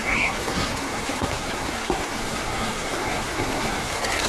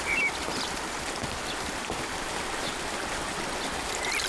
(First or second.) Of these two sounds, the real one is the second